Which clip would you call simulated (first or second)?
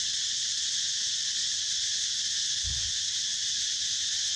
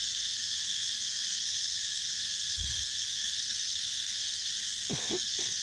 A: second